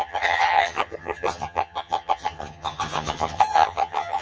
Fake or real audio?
fake